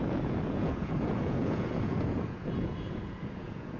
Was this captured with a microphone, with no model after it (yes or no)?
no